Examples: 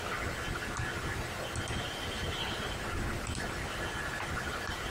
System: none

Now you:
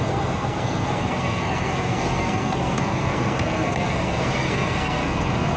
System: codec, SNAC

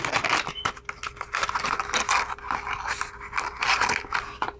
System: none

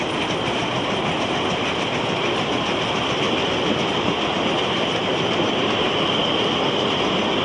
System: none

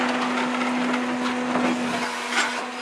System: none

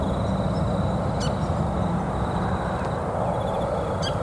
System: none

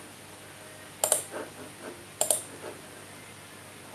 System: none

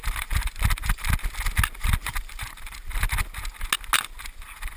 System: none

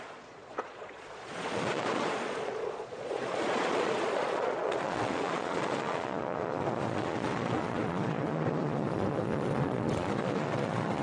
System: vocoder, Vocos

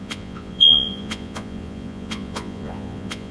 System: vocoder, Vocos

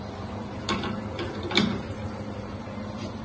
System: none